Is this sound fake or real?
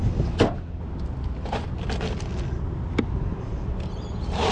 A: real